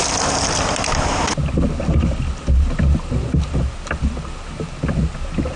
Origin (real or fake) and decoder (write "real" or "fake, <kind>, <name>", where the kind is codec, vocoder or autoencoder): real